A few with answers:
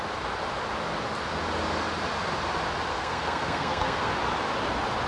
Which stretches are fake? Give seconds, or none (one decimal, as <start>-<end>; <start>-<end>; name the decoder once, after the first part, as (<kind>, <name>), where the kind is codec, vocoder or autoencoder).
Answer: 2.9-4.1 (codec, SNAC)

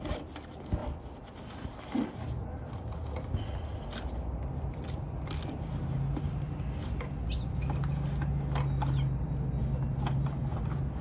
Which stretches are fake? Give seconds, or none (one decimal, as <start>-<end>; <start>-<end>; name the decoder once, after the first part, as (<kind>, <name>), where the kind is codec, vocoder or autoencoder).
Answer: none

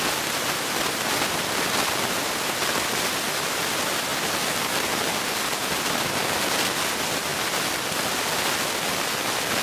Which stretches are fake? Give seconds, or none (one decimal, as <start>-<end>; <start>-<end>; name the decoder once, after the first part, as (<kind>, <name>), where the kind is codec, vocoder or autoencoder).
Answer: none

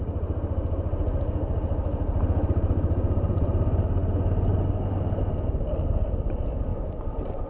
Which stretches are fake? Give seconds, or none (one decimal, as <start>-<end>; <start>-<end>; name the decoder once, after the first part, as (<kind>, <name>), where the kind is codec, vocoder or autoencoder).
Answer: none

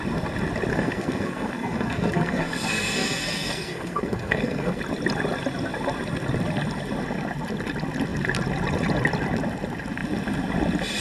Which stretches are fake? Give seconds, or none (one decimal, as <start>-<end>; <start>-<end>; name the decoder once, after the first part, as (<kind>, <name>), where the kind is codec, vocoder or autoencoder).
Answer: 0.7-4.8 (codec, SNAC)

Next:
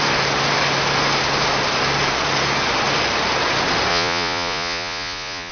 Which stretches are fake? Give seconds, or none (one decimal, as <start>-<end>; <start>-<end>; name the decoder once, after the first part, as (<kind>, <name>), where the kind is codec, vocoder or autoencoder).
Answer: 3.9-5.5 (vocoder, Vocos)

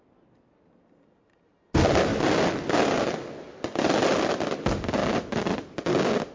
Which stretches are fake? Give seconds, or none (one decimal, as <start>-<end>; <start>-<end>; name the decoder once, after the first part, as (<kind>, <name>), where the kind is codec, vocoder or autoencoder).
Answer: none

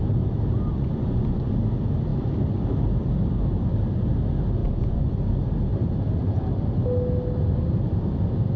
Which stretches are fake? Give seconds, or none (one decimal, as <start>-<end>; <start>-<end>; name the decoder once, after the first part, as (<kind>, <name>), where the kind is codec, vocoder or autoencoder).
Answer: 0.7-1.5 (vocoder, Vocos); 4.6-5.1